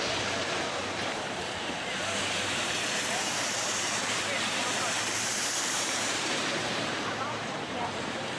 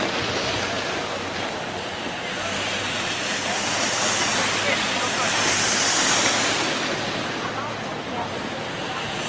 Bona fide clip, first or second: second